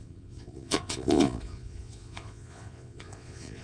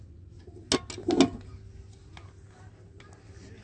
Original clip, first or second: second